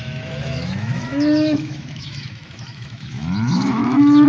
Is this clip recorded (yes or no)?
no